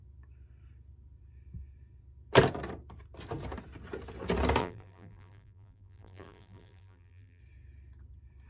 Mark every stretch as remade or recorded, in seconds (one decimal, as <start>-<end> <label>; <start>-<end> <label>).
0.0-4.6 recorded; 4.6-7.4 remade; 7.4-8.5 recorded